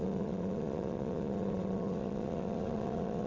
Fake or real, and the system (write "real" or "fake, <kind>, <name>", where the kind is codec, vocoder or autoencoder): fake, vocoder, Vocos